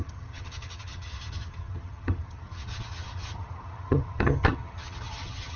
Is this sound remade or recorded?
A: remade